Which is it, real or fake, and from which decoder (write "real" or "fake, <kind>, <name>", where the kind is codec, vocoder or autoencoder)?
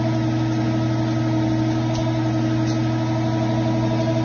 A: real